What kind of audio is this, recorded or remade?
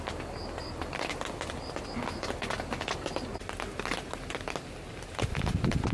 recorded